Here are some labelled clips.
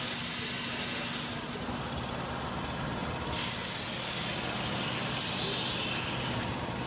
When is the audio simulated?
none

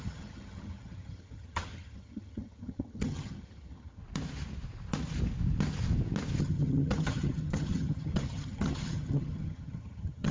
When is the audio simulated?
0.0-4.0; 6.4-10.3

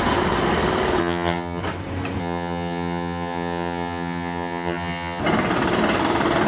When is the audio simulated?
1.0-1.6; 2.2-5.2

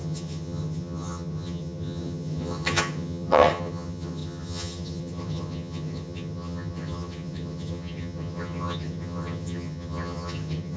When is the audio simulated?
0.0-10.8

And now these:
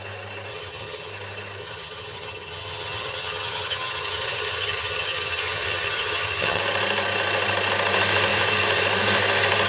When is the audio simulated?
0.5-1.1; 1.6-6.6

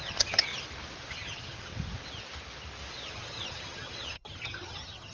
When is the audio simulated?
0.0-0.5; 1.1-1.7; 3.1-5.1